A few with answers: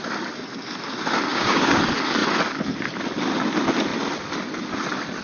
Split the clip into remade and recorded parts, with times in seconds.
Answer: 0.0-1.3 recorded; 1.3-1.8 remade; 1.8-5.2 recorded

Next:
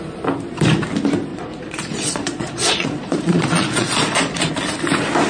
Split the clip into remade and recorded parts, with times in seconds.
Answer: 0.0-1.3 recorded; 1.3-4.5 remade; 4.5-5.3 recorded

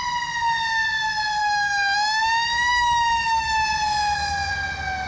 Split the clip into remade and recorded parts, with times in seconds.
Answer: 0.0-1.4 recorded; 1.4-4.5 remade; 4.5-5.1 recorded

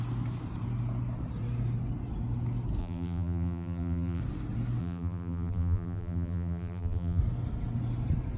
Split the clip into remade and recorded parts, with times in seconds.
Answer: 0.0-2.8 recorded; 2.8-4.2 remade; 4.2-4.8 recorded; 4.8-7.2 remade; 7.2-8.4 recorded

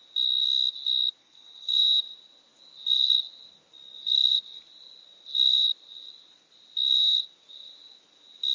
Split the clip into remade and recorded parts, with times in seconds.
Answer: 0.0-1.2 recorded; 1.2-1.8 remade; 1.8-8.5 recorded

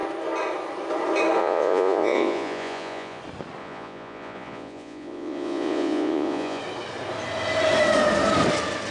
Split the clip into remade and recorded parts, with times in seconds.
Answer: 0.0-1.4 recorded; 1.4-3.2 remade; 3.2-3.6 recorded; 3.6-6.6 remade; 6.6-8.9 recorded

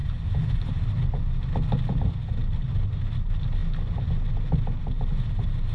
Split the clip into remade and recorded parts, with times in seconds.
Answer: 0.0-5.7 recorded

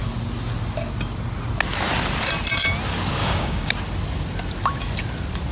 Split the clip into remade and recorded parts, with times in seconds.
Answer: 0.0-3.2 recorded; 3.2-3.7 remade; 3.7-5.5 recorded